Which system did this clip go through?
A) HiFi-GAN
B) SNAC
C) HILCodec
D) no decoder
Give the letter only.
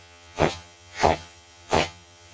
A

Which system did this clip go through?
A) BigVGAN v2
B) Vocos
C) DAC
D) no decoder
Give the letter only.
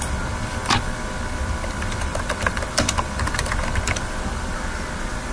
A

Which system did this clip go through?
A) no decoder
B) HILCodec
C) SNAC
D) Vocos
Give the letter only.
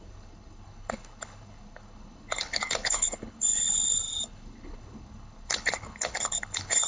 B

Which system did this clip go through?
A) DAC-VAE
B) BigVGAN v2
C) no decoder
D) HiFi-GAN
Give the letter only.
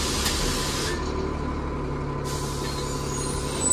C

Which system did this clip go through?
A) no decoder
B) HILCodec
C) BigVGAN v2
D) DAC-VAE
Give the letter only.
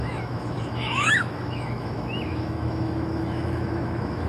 D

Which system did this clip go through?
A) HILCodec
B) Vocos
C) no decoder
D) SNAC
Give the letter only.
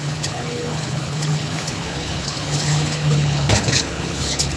A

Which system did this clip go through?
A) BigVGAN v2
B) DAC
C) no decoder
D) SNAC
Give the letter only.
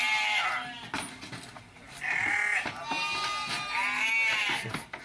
C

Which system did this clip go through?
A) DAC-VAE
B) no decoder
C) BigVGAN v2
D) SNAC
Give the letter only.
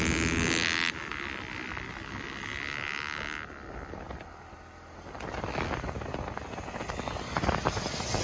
B